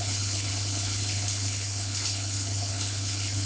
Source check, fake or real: fake